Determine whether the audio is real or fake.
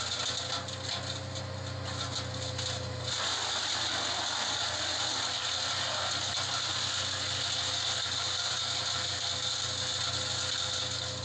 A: real